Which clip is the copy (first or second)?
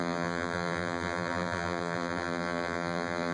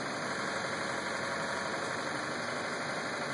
first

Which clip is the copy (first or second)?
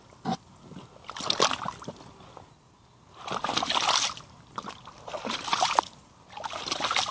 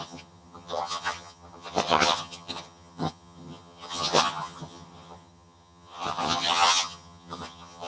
second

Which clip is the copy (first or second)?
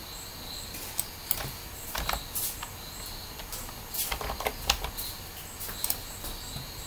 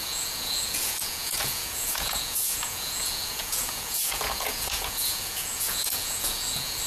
second